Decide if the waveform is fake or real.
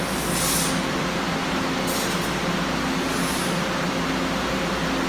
real